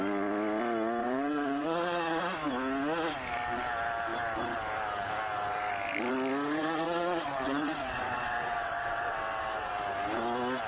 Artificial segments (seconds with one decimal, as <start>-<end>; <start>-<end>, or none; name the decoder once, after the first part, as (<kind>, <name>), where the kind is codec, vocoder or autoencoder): 1.0-2.2 (vocoder, WaveNeXt); 6.6-9.7